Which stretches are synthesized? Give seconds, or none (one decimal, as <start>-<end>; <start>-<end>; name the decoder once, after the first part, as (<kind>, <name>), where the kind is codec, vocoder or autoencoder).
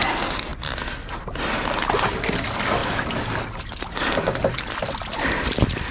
2.8-3.3 (vocoder, BigVGAN v2)